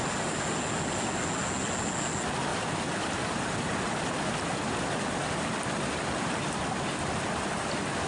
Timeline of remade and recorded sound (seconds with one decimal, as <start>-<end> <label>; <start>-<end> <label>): 0.0-2.5 recorded; 2.5-5.2 remade; 5.2-8.1 recorded